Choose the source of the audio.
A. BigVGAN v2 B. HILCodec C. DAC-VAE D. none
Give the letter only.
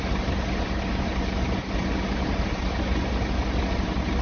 D